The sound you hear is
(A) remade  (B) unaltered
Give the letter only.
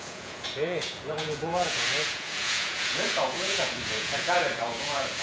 A